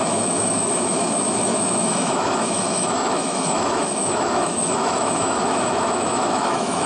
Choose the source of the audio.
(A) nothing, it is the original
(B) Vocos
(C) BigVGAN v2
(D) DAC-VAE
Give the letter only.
D